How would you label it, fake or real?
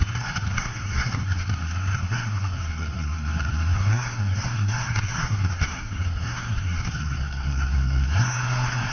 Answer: fake